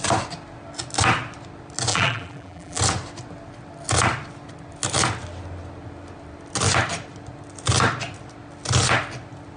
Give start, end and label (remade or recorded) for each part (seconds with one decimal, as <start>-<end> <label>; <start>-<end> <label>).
0.0-1.9 recorded; 1.9-2.8 remade; 2.8-9.6 recorded